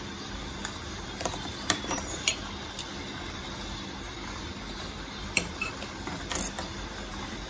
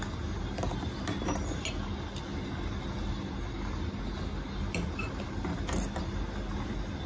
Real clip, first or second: second